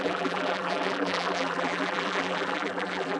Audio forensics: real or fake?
fake